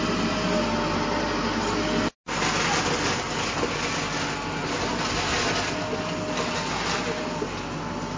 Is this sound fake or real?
real